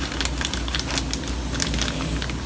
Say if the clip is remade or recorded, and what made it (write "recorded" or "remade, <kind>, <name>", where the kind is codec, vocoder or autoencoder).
recorded